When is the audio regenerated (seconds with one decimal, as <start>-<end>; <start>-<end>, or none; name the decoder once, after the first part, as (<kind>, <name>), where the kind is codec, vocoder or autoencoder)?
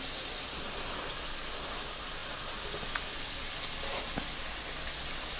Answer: none